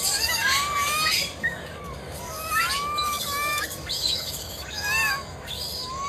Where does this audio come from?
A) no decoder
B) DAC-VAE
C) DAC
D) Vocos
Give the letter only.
C